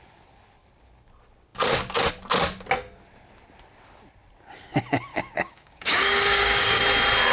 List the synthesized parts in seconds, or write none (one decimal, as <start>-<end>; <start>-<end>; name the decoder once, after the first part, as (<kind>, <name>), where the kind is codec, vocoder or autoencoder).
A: 5.1-6.8 (codec, DAC)